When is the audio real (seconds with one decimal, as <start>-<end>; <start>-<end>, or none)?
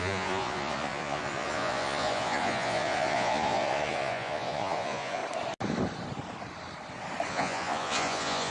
5.2-7.3